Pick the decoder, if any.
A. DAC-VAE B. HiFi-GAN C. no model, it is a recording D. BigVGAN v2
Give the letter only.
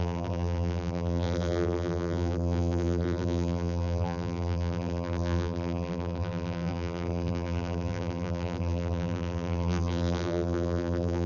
D